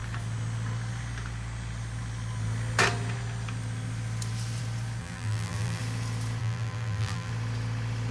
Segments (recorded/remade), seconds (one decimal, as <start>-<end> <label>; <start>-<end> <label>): 0.0-5.0 recorded; 5.0-5.8 remade; 5.8-6.4 recorded; 6.4-7.3 remade; 7.3-8.1 recorded